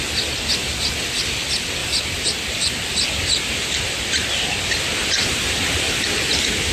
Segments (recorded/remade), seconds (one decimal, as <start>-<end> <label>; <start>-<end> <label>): 0.0-0.6 recorded; 0.6-1.2 remade; 1.2-1.8 recorded; 1.8-4.0 remade; 4.0-5.0 recorded; 5.0-6.1 remade; 6.1-6.7 recorded